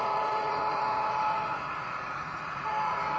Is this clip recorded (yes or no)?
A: no